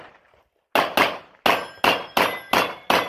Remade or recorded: recorded